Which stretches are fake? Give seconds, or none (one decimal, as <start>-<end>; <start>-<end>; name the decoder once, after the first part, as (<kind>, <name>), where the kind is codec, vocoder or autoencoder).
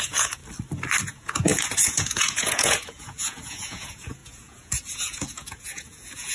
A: 0.0-0.4 (vocoder, Vocos); 1.0-6.3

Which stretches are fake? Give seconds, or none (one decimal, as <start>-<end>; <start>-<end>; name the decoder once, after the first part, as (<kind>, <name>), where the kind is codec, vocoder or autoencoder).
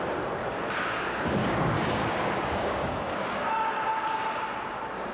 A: 0.4-3.5 (codec, DAC)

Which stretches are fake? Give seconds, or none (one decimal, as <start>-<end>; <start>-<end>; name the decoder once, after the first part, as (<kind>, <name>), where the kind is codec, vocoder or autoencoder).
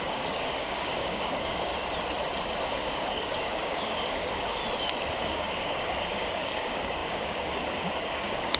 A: 0.0-1.7 (codec, DAC); 2.7-4.6; 5.2-8.6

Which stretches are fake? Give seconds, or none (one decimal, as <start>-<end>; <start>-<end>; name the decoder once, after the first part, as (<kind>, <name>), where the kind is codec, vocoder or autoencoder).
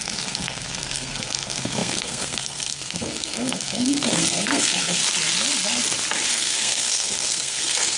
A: 0.0-5.0 (codec, SNAC); 6.3-8.0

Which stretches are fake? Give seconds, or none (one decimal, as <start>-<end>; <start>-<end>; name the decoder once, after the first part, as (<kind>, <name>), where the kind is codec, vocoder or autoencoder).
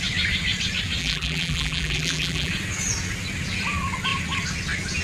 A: 1.0-2.5 (vocoder, BigVGAN v2)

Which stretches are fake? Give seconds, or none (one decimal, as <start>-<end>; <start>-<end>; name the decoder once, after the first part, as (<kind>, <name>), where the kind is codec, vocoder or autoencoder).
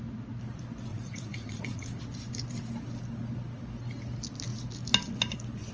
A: 0.9-2.0 (vocoder, Vocos)